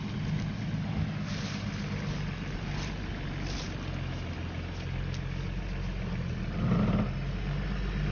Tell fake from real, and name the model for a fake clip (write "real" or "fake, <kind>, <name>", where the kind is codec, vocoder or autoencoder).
real